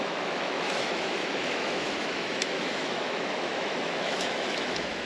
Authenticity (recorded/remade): remade